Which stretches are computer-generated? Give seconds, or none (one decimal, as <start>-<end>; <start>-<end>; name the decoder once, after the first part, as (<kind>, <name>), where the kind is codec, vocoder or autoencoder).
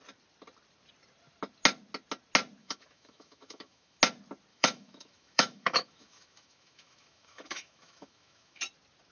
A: 2.6-4.0 (autoencoder, DAC-VAE); 4.5-8.6